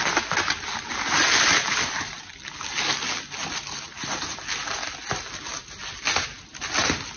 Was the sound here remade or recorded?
recorded